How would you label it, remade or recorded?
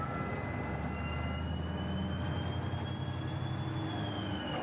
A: recorded